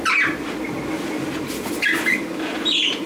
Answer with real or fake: real